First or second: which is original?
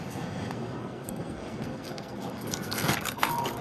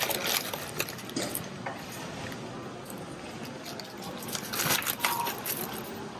second